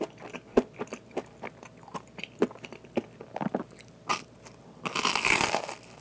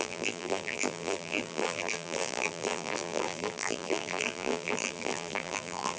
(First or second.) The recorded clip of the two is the first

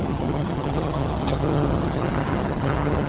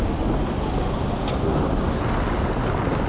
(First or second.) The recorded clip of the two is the second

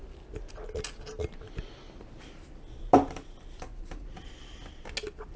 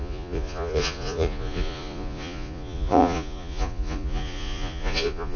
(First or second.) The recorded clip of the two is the first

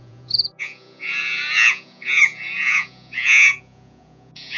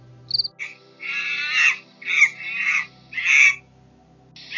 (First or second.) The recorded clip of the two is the second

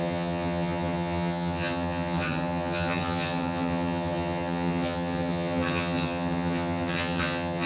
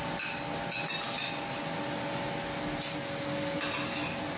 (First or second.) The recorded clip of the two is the second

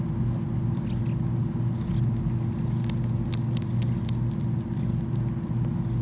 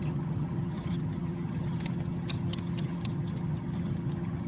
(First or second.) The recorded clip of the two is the first